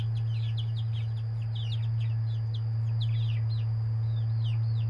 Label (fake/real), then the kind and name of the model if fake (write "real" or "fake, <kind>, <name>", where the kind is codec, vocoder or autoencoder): real